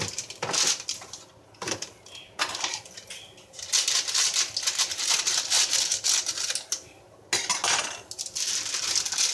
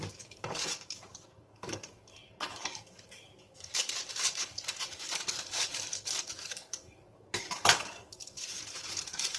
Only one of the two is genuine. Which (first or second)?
first